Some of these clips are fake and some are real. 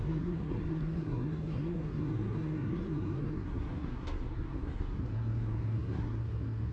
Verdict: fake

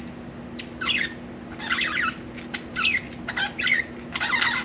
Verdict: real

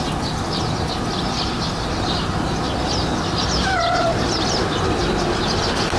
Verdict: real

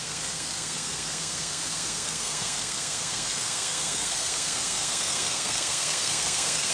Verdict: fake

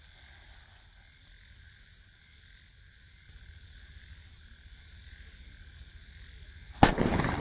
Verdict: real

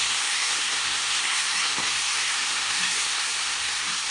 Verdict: fake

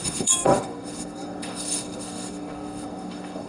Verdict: fake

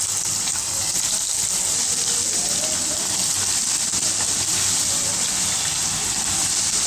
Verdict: real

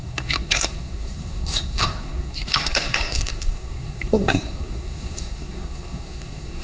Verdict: fake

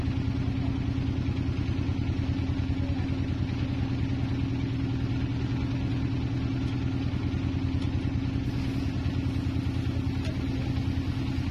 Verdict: real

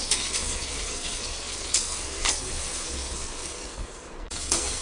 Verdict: fake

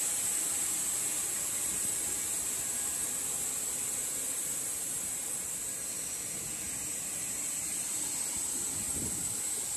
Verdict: real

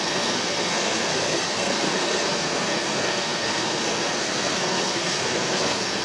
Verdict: fake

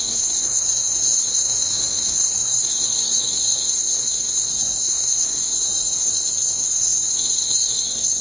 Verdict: fake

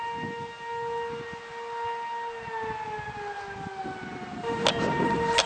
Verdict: real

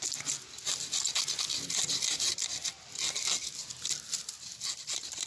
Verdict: real